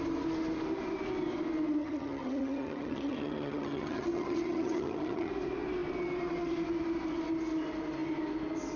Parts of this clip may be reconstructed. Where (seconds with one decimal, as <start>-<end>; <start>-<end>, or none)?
1.8-5.3